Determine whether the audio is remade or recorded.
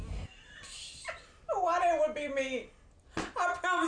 recorded